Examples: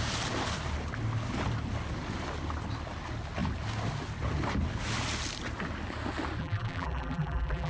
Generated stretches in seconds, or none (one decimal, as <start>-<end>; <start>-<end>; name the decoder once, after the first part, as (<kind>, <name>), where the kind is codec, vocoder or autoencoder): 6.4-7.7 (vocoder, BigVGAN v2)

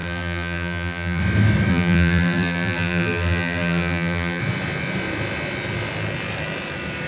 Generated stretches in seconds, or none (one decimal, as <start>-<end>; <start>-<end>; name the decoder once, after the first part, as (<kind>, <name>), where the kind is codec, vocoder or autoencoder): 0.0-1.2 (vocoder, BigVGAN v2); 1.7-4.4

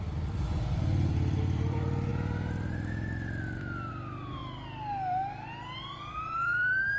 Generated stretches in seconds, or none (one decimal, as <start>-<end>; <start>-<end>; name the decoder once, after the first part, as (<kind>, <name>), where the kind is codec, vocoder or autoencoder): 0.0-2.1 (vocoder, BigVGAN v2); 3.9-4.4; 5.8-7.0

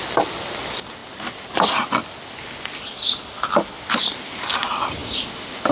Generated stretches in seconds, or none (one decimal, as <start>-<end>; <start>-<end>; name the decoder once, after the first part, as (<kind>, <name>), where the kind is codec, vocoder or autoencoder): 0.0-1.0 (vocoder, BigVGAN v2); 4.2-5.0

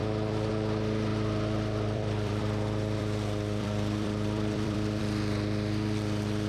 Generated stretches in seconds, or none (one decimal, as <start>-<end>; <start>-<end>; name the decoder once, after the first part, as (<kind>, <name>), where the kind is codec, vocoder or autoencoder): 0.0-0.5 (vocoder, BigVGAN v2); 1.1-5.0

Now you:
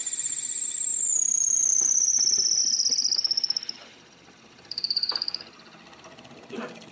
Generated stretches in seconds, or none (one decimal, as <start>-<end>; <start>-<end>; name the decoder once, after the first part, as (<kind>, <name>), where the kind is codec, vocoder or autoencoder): 2.6-6.9 (vocoder, BigVGAN v2)